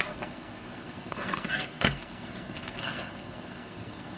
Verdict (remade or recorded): remade